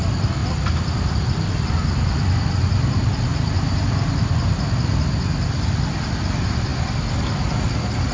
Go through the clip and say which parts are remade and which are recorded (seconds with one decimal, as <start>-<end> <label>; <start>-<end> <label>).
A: 0.0-8.1 recorded